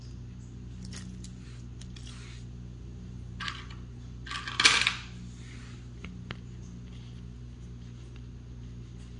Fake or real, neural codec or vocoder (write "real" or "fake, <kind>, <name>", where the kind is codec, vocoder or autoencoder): real